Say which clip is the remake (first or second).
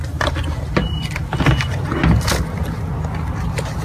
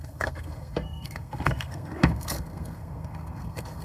second